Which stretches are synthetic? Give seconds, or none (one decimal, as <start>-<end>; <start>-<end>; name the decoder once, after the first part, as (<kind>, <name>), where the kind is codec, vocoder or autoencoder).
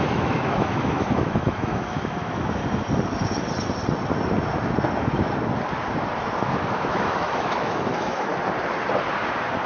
0.0-2.6 (autoencoder, DAC-VAE); 6.2-8.3